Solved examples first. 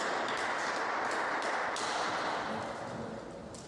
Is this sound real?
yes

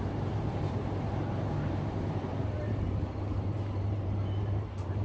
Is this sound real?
no